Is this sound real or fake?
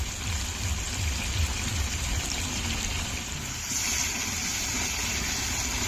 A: real